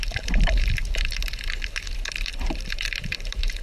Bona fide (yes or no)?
no